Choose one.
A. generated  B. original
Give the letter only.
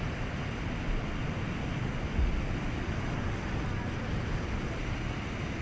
B